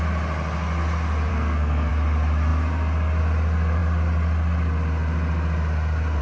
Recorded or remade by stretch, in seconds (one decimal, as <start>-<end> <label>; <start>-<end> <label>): 0.0-1.3 recorded; 1.3-1.9 remade; 1.9-6.2 recorded